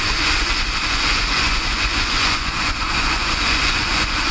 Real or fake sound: fake